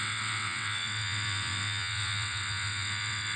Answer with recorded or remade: remade